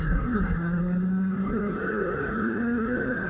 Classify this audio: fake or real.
fake